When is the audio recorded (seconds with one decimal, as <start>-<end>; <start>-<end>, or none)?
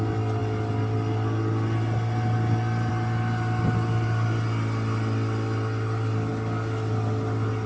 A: 0.0-7.7